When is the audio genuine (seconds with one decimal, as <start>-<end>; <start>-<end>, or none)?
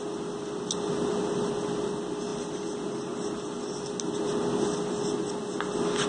0.0-6.1